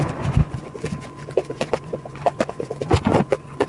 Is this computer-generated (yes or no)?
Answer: yes